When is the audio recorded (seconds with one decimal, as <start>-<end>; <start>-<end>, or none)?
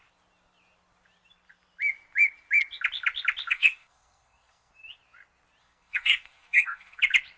0.0-3.5; 4.7-5.6; 7.0-7.4